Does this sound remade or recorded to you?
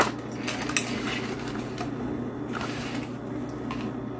recorded